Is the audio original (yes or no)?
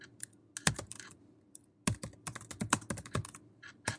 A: yes